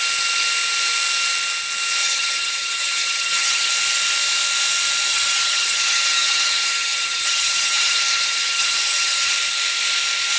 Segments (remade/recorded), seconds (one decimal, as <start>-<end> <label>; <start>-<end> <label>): 0.0-2.0 recorded; 2.0-3.7 remade; 3.7-5.1 recorded; 5.1-9.3 remade; 9.3-10.4 recorded